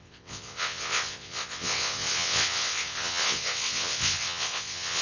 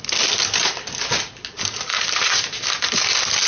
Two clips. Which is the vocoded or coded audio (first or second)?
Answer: first